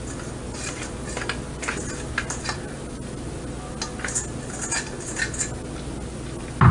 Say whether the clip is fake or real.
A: real